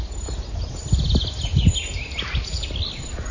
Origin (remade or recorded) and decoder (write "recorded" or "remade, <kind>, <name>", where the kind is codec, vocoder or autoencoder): recorded